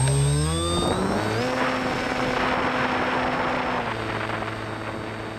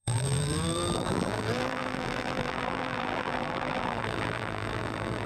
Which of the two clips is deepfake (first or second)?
second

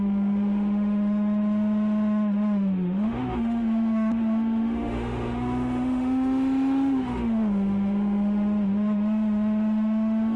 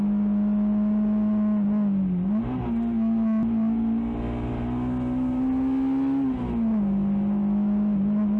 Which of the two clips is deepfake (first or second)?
first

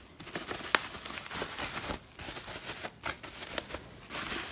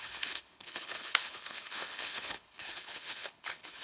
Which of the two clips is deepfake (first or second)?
second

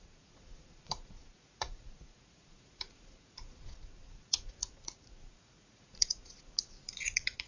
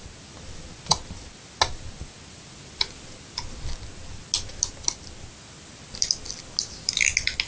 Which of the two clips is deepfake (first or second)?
first